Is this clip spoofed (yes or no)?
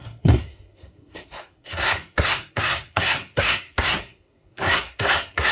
yes